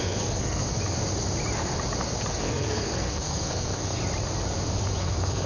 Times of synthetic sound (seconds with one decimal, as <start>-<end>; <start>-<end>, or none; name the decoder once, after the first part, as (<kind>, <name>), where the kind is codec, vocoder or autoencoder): 0.0-0.6 (codec, SNAC); 2.3-4.0; 5.0-5.5